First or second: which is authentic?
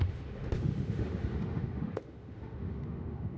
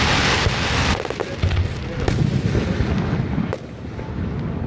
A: second